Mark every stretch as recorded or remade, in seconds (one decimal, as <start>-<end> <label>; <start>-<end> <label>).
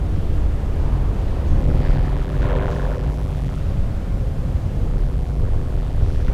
0.0-1.6 recorded; 1.6-3.6 remade; 3.6-4.9 recorded; 4.9-6.3 remade